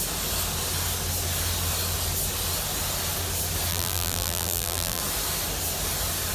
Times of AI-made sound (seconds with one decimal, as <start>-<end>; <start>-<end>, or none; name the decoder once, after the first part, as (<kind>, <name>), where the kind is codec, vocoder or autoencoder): 3.7-5.0 (vocoder, BigVGAN v2)